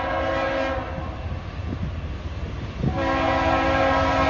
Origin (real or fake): real